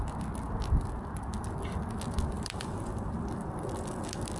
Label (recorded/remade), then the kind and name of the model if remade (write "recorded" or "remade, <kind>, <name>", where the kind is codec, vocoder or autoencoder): recorded